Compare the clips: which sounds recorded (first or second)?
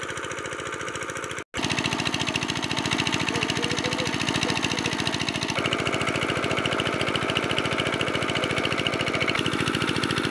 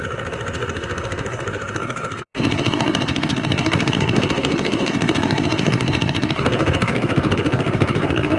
first